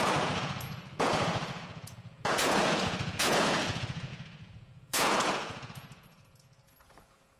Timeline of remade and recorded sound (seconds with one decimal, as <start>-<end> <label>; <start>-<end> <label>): 0.0-7.4 remade